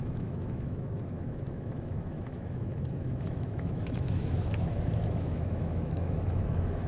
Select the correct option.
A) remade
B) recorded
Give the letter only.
A